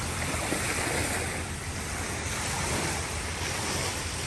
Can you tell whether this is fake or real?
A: fake